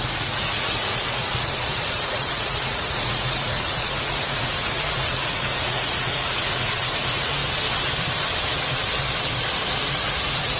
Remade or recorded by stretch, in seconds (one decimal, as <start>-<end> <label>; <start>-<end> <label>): 0.0-7.4 remade; 7.4-9.7 recorded; 9.7-10.6 remade